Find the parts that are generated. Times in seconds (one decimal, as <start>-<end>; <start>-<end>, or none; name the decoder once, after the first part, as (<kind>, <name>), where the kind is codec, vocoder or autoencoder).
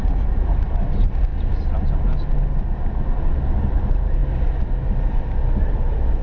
0.0-1.3 (vocoder, BigVGAN v2); 3.7-4.2; 5.6-6.2